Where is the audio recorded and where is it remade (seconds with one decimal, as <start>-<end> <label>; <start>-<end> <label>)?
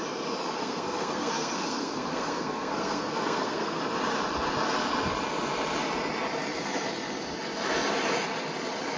0.0-0.6 recorded; 0.6-3.8 remade; 3.8-9.0 recorded